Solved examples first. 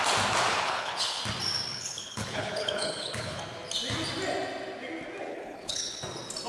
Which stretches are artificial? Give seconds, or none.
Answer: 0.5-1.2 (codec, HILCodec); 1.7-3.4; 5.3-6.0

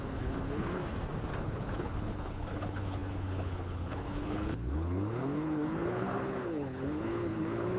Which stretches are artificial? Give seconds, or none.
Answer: 0.0-0.8 (codec, HILCodec); 1.4-7.8

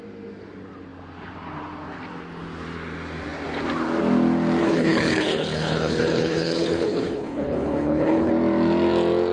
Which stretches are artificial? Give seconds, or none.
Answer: 4.6-8.3 (codec, HILCodec)

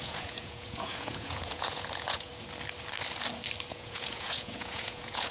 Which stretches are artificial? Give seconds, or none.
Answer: 0.0-2.3 (vocoder, Vocos); 3.7-5.3

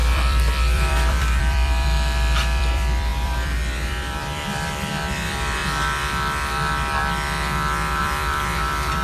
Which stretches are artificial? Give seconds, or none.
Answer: 0.0-5.6 (vocoder, BigVGAN v2); 8.0-9.0

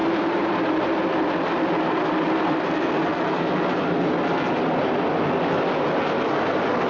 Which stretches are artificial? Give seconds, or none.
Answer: 0.0-2.7 (vocoder, BigVGAN v2)

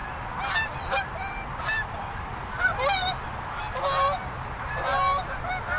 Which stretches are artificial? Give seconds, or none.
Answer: none